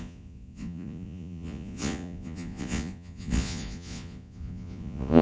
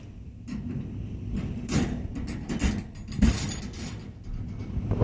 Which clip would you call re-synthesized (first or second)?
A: first